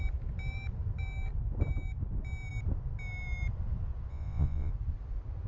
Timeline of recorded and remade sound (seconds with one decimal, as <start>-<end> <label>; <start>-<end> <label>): 0.0-4.1 recorded; 4.1-4.7 remade; 4.7-5.5 recorded